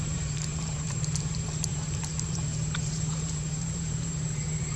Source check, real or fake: fake